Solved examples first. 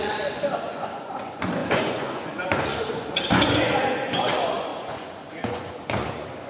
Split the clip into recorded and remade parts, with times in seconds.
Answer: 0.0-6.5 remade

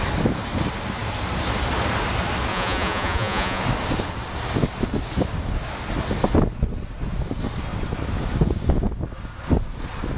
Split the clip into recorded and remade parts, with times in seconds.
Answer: 0.0-2.5 recorded; 2.5-3.6 remade; 3.6-10.2 recorded